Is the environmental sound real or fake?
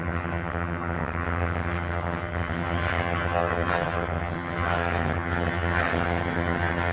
fake